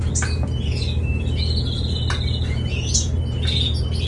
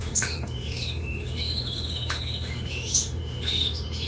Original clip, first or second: first